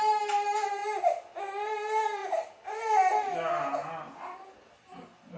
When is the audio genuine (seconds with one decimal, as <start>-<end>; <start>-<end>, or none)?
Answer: 0.0-5.4